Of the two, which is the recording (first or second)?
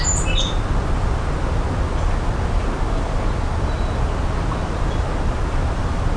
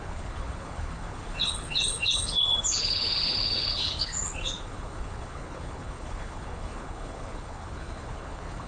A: first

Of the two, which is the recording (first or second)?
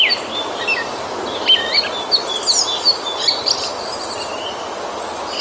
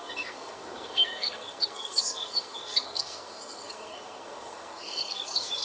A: first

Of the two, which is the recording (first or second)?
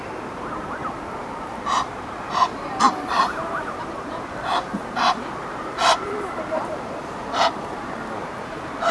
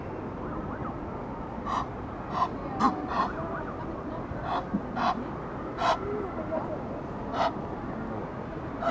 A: second